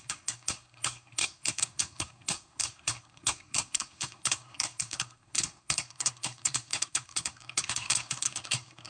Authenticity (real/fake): fake